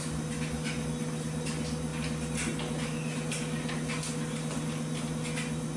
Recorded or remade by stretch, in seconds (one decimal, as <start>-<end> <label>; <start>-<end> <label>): 0.0-5.8 recorded